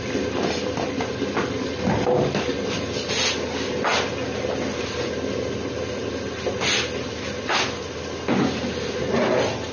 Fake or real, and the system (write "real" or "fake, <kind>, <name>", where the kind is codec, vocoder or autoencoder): real